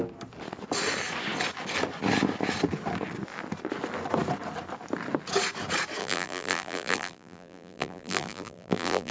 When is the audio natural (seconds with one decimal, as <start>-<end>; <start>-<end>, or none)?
0.0-6.0